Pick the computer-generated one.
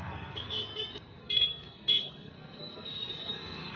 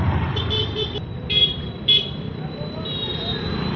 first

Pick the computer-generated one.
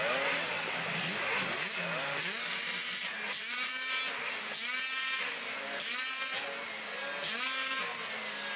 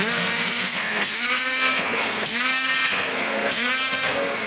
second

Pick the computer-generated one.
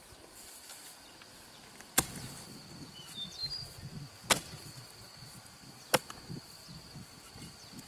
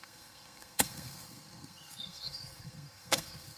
second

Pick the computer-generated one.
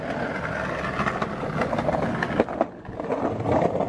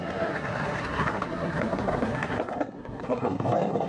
second